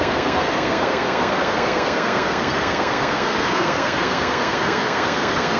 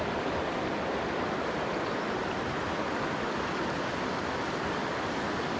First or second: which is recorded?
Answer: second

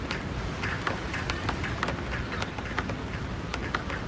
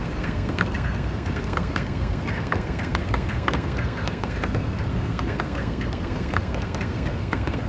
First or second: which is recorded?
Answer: first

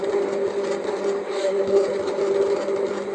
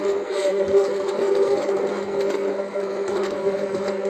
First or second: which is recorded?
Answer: first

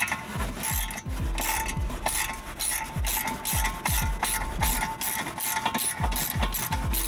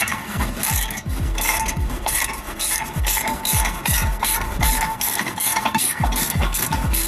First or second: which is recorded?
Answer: first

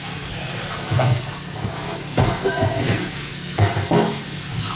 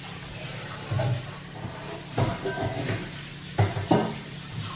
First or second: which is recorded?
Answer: second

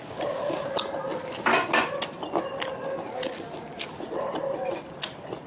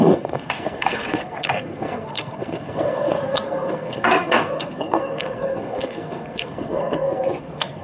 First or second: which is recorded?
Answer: first